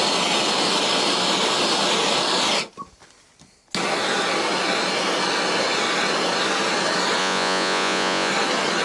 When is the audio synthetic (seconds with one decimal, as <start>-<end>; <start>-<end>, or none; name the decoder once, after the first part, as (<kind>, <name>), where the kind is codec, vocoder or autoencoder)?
7.2-8.3 (vocoder, Vocos)